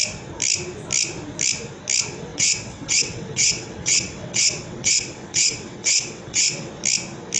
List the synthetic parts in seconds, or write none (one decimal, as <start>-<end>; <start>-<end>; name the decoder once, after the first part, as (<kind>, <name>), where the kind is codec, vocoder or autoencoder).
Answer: 2.3-6.7 (vocoder, WaveNeXt)